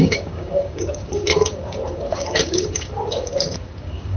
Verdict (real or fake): fake